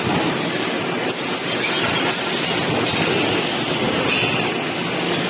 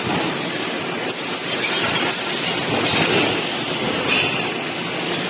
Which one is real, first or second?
first